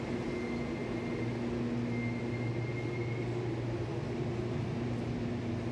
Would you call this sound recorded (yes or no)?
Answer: yes